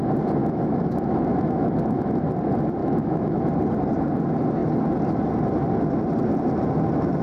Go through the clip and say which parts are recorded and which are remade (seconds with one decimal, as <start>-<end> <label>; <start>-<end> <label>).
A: 0.0-0.4 recorded; 0.4-2.2 remade; 2.2-2.8 recorded; 2.8-3.4 remade; 3.4-7.2 recorded